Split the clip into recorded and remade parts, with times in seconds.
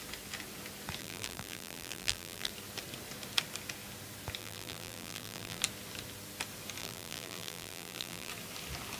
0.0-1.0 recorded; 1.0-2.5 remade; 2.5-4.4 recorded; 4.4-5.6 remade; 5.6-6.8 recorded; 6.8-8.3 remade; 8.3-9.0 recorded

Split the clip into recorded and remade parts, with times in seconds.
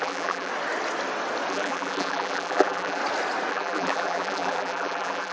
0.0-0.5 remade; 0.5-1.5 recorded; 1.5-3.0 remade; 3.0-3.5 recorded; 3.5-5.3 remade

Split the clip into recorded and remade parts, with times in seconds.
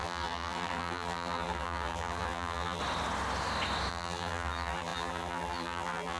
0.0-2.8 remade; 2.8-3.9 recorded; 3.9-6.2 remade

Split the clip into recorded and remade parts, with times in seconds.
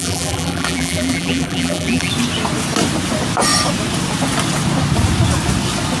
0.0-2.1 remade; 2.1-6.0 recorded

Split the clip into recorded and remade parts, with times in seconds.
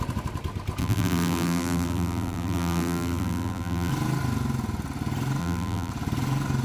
0.0-0.8 recorded; 0.8-3.9 remade; 3.9-5.4 recorded; 5.4-5.9 remade; 5.9-6.6 recorded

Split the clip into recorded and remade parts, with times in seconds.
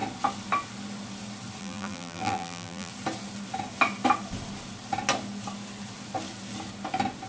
0.0-1.6 recorded; 1.6-2.9 remade; 2.9-7.3 recorded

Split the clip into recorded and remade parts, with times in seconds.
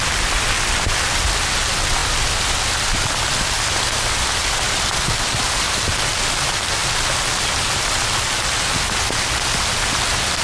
0.0-10.4 recorded